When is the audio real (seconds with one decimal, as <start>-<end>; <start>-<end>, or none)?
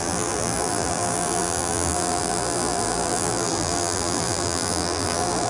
none